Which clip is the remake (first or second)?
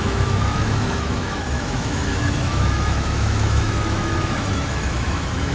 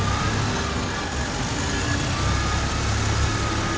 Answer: first